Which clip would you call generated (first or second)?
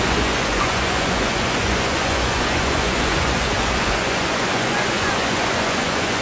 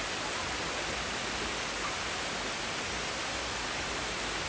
first